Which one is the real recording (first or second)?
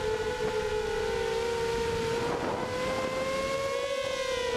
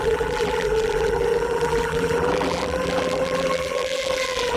first